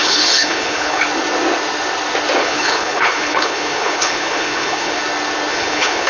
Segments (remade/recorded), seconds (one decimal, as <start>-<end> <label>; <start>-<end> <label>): 0.0-1.0 remade; 1.0-2.4 recorded; 2.4-5.0 remade; 5.0-5.5 recorded; 5.5-6.1 remade